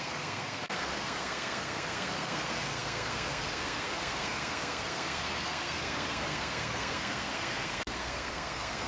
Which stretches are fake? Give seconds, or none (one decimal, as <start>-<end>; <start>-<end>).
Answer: 0.0-8.9